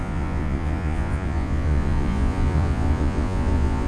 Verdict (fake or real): fake